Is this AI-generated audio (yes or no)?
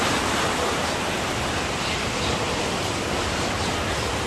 no